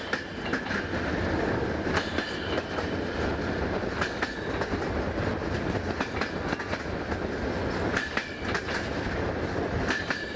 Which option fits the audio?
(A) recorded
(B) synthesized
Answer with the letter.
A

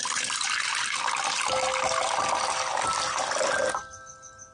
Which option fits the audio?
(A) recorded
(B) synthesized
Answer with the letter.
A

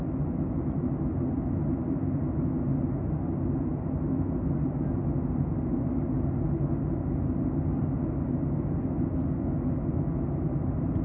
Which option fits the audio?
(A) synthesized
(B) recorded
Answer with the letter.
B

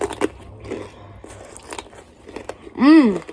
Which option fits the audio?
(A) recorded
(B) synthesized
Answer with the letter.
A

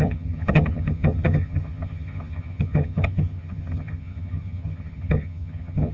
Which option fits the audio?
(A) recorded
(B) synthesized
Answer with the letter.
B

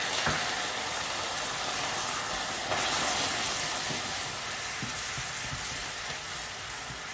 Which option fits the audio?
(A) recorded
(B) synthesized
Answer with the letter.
A